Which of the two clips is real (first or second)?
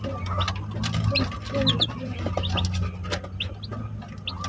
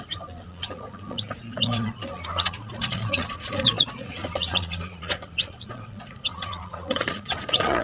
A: first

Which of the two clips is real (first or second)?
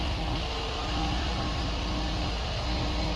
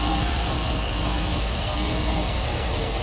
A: first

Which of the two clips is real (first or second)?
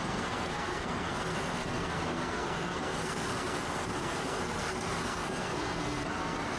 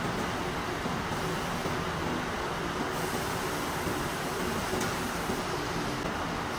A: second